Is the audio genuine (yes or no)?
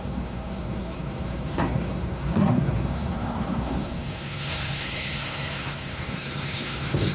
no